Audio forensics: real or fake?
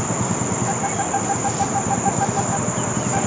real